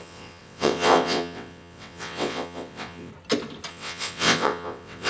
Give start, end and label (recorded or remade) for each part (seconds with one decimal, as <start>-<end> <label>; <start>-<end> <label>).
0.0-3.1 remade; 3.1-3.7 recorded; 3.7-5.1 remade